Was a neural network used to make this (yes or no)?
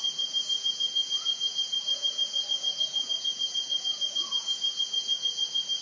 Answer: yes